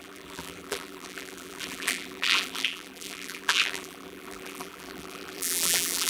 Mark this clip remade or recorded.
remade